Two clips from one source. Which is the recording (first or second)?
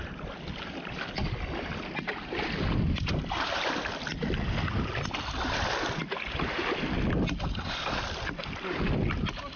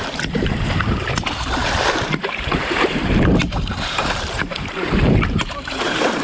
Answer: first